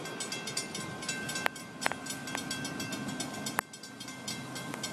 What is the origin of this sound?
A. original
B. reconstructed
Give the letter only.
A